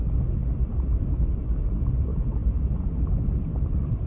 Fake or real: real